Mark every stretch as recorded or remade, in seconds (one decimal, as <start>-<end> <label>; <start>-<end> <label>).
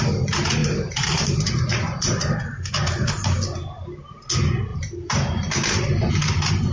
0.0-0.6 recorded; 0.6-2.7 remade; 2.7-4.7 recorded; 4.7-6.1 remade; 6.1-6.7 recorded